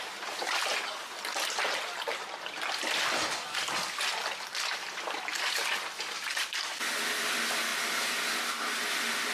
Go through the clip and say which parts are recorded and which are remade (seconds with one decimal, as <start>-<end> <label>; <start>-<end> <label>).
0.0-9.3 recorded